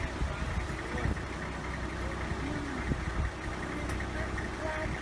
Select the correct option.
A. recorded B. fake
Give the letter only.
A